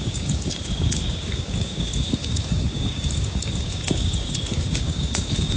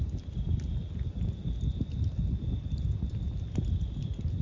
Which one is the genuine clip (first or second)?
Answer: second